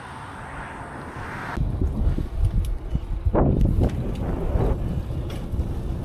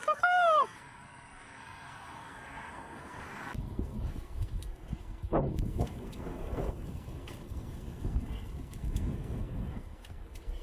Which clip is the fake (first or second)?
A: second